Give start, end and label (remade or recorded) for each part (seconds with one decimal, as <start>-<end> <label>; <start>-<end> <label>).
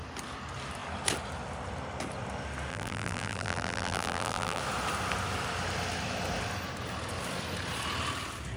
0.0-2.7 recorded; 2.7-4.6 remade; 4.6-8.6 recorded